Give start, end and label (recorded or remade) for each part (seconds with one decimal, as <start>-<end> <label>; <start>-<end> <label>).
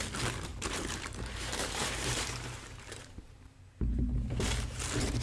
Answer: 0.0-0.5 recorded; 0.5-3.6 remade; 3.6-5.2 recorded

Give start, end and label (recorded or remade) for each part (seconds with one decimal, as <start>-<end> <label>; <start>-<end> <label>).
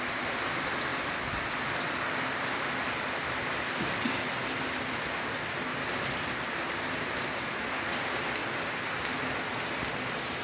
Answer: 0.0-0.9 recorded; 0.9-4.3 remade; 4.3-5.7 recorded; 5.7-6.3 remade; 6.3-10.4 recorded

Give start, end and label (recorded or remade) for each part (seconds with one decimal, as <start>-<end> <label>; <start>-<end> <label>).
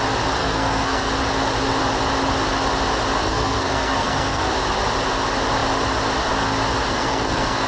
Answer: 0.0-0.4 recorded; 0.4-1.1 remade; 1.1-3.2 recorded; 3.2-4.5 remade; 4.5-6.9 recorded; 6.9-7.7 remade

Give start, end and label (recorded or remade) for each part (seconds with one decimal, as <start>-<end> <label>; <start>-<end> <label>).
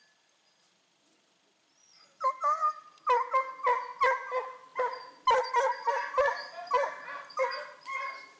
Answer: 0.0-8.4 recorded